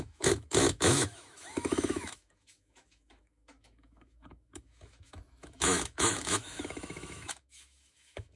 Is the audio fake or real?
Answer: fake